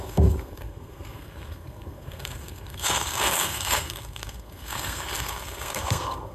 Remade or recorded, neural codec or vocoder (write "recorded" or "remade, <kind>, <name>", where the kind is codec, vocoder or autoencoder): remade, codec, SNAC